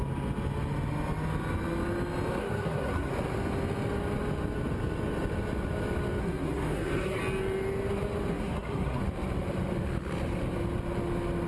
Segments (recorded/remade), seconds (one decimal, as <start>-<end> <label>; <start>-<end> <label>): 0.0-2.4 recorded; 2.4-3.1 remade; 3.1-6.2 recorded; 6.2-7.2 remade; 7.2-8.3 recorded; 8.3-9.0 remade; 9.0-11.5 recorded